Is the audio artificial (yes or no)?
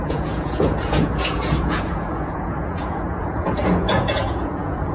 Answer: yes